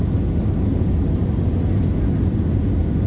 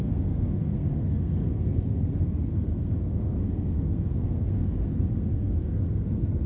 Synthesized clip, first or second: second